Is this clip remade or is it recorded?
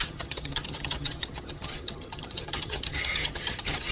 remade